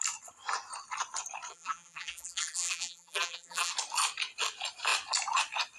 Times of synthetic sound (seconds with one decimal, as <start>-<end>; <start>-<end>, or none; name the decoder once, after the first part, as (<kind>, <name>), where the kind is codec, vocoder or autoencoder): 1.5-3.7 (vocoder, BigVGAN v2)